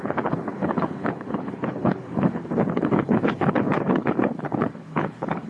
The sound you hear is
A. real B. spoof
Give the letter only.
B